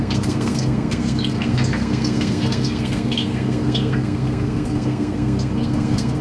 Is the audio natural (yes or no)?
no